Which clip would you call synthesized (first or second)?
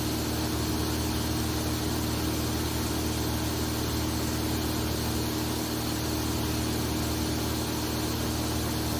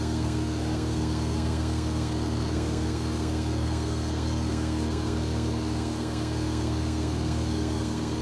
second